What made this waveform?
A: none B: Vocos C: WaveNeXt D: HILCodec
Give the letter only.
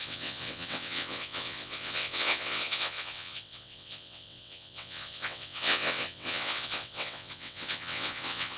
C